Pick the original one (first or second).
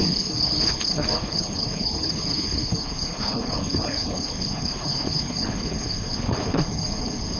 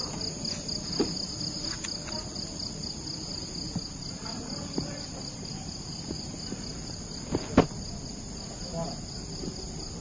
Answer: second